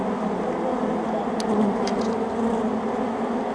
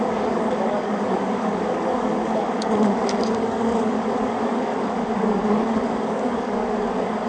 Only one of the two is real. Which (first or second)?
first